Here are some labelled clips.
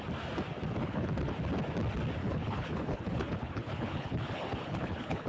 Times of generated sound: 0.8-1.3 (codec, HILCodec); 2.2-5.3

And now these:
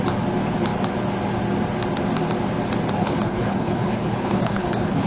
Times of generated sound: 3.0-5.1 (codec, HILCodec)

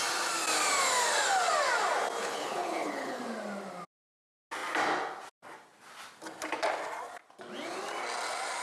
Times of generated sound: 2.2-3.2 (codec, HILCodec)